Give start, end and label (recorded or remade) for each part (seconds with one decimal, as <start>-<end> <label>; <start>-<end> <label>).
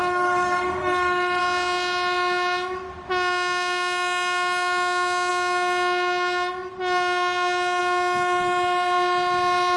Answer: 0.0-1.4 remade; 1.4-9.8 recorded